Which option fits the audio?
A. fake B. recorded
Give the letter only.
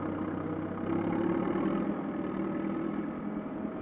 B